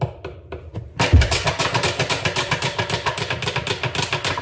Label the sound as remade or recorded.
recorded